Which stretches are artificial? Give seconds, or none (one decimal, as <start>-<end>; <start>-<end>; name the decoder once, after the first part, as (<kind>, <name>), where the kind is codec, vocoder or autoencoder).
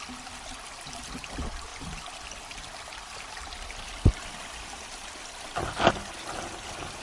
none